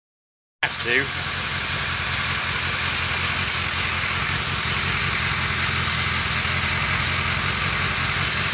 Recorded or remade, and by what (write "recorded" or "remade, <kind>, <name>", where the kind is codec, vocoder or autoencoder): recorded